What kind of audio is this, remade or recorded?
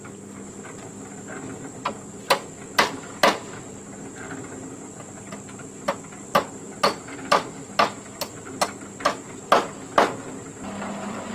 recorded